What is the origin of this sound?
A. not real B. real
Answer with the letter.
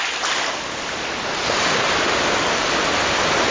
B